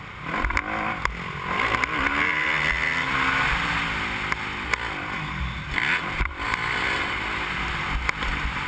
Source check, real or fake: real